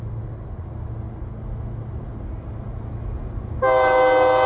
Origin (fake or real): real